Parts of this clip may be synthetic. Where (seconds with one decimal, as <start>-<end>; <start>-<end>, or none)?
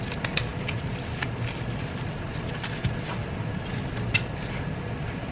0.5-3.7